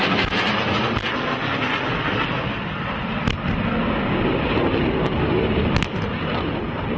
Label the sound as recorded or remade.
recorded